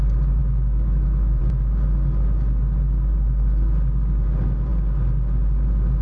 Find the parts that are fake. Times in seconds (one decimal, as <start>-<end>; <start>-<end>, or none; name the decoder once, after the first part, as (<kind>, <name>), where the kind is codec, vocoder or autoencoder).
0.4-1.4 (autoencoder, DAC-VAE)